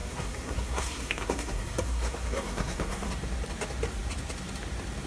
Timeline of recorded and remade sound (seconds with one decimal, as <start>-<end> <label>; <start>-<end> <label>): 0.0-3.1 remade; 3.1-5.1 recorded